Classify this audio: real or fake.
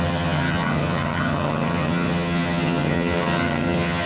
fake